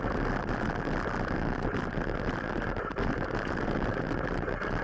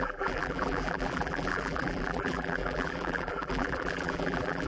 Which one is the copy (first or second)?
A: second